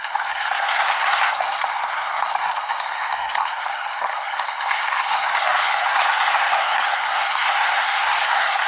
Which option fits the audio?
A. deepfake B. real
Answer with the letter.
A